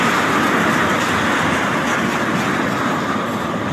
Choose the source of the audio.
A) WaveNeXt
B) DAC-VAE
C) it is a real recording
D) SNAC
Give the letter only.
C